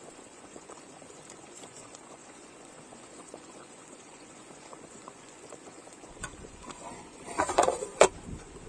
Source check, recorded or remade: remade